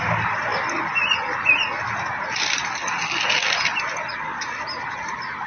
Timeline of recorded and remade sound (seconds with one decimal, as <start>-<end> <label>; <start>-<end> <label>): 0.0-5.5 recorded

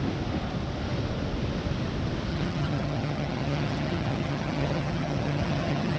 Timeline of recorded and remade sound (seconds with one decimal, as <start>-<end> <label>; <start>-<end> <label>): 0.0-2.3 recorded; 2.3-6.0 remade